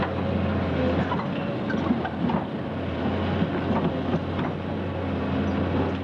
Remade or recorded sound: recorded